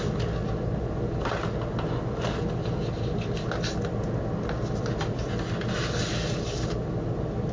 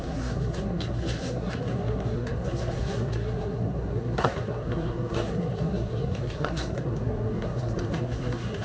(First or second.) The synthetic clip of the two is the second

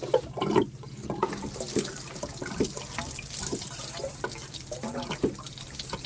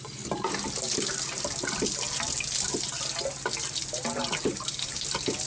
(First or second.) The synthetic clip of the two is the first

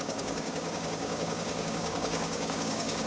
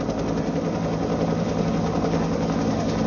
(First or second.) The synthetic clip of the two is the first